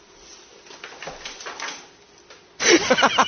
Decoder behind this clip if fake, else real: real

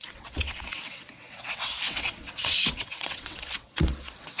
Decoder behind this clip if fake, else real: fake, vocoder, WaveNeXt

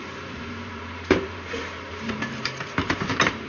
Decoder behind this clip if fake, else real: fake, vocoder, BigVGAN v2